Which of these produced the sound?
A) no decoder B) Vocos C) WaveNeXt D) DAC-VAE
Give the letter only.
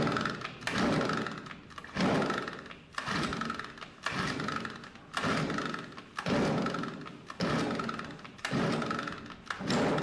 A